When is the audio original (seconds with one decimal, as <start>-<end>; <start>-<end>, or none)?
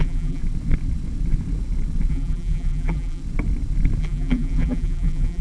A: 0.4-2.1; 3.2-4.0